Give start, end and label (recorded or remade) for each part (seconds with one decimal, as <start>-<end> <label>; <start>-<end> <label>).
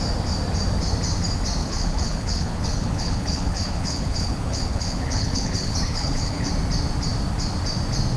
0.0-1.6 recorded; 1.6-6.5 remade; 6.5-8.2 recorded